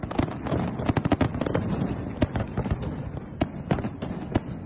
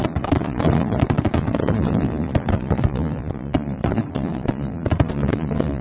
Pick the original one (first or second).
first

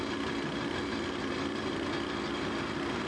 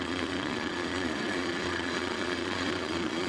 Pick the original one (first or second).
first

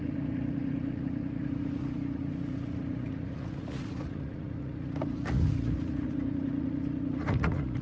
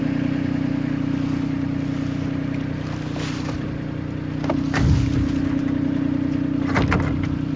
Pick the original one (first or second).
second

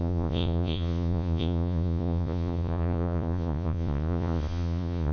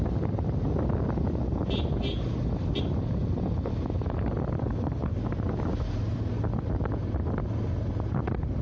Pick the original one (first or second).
second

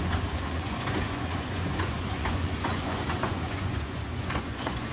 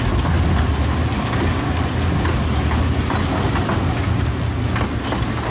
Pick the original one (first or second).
second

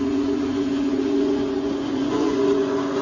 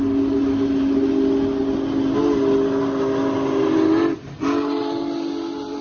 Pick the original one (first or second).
second